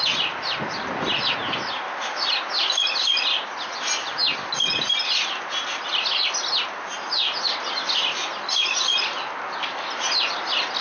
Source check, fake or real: real